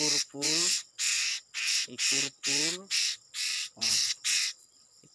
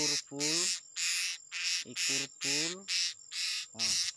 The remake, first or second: first